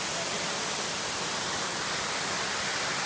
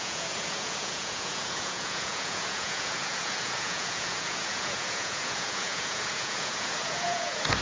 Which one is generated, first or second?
second